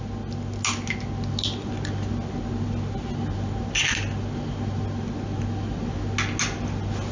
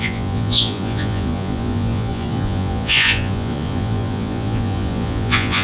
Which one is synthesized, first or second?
second